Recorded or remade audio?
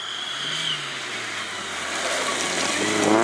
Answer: recorded